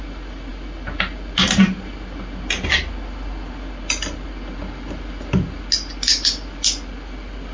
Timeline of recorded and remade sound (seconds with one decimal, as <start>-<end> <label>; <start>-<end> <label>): 0.0-7.5 recorded